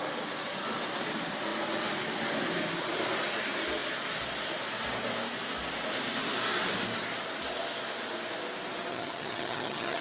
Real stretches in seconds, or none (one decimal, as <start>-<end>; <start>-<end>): 0.0-8.9